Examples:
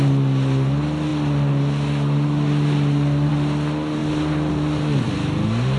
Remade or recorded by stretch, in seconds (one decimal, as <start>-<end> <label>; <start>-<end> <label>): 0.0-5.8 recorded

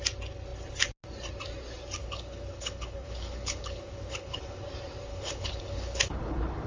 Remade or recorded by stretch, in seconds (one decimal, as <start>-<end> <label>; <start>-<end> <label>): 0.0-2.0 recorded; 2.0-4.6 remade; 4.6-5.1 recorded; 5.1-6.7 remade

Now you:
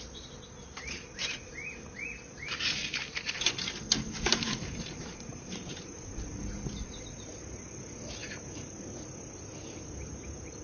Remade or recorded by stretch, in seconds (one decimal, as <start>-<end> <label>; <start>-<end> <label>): 0.0-4.3 recorded; 4.3-6.4 remade; 6.4-8.2 recorded; 8.2-8.8 remade; 8.8-10.6 recorded